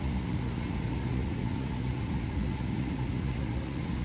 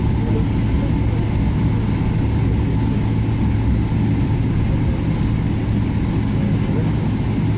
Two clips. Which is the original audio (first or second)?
second